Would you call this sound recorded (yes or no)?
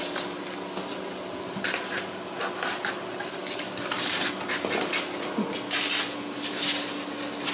yes